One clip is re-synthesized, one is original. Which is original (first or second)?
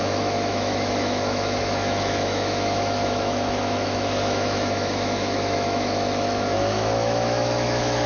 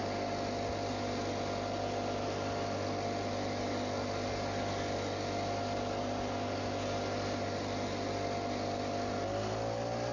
second